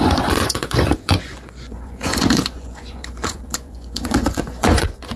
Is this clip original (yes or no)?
no